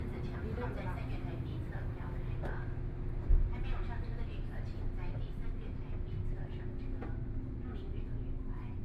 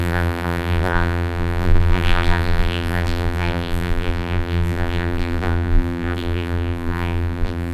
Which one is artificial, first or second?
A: second